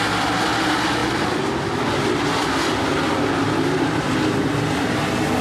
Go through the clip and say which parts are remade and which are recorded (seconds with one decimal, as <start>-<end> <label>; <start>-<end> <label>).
0.0-5.4 recorded